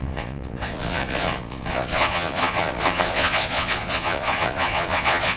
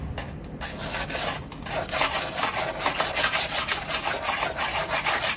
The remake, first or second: first